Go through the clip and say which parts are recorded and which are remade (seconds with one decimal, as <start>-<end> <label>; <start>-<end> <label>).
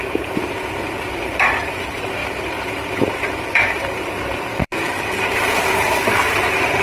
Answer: 0.0-6.8 remade